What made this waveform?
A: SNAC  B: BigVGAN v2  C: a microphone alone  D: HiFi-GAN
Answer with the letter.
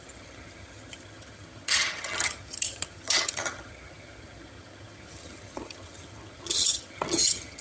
D